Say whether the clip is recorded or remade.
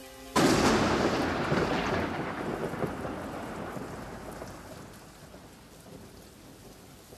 recorded